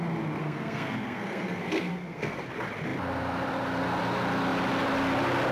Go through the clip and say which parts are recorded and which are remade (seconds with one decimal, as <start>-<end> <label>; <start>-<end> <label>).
0.0-0.4 recorded; 0.4-2.4 remade; 2.4-5.5 recorded